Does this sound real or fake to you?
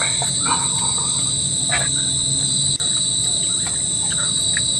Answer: real